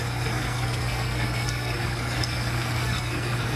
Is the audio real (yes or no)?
no